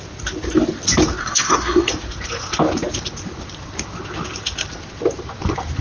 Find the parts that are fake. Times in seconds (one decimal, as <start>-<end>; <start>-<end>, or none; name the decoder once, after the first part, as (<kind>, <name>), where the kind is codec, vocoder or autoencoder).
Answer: 1.2-1.9 (codec, SNAC)